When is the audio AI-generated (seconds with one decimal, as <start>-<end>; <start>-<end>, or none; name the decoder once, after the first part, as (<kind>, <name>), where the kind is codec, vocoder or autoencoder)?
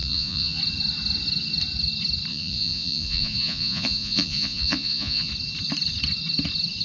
0.0-0.6 (vocoder, Vocos); 2.3-5.3